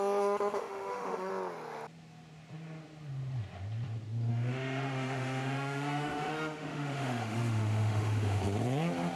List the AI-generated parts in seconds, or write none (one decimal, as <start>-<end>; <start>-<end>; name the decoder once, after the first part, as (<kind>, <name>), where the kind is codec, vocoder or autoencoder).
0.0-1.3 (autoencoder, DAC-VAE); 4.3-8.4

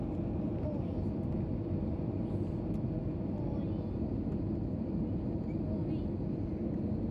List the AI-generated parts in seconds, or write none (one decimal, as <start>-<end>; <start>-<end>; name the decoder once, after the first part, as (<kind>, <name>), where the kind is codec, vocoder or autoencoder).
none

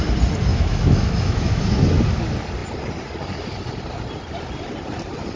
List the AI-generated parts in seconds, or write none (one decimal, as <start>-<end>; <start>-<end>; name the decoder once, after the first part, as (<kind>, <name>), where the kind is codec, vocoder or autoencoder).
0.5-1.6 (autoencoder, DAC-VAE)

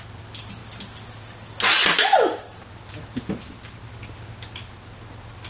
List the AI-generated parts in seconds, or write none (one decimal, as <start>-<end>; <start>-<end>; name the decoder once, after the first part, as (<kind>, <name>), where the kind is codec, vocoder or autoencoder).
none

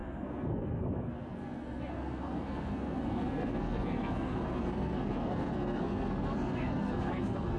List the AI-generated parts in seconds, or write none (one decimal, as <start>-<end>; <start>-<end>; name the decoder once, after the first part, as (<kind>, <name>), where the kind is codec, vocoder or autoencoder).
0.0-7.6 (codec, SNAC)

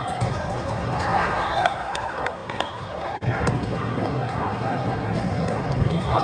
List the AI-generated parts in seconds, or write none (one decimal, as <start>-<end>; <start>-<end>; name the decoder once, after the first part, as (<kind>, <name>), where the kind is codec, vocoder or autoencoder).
0.0-6.2 (codec, SNAC)

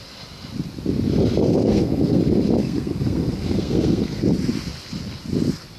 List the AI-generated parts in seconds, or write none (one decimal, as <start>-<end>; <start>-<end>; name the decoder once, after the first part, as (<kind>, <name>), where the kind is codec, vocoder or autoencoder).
1.6-2.2 (codec, SNAC); 2.6-4.2

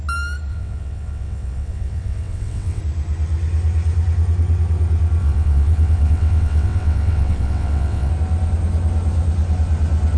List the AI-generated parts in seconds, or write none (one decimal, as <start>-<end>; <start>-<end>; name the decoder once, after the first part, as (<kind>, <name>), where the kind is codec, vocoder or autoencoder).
0.5-2.8 (vocoder, WaveNeXt); 5.2-8.1